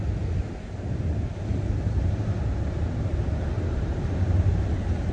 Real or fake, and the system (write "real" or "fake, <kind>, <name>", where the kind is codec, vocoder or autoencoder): real